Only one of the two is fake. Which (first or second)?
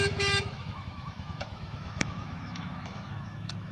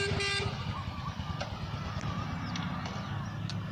first